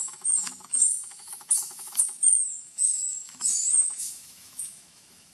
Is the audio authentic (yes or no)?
no